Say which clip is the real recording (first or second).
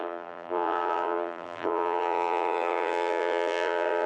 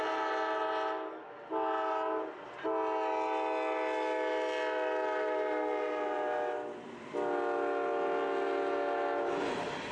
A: second